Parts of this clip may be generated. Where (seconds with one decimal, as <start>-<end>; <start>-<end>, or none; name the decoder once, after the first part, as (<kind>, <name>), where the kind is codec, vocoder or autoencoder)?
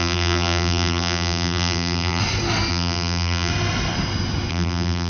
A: 0.0-2.2 (vocoder, BigVGAN v2); 2.7-3.5; 4.5-5.1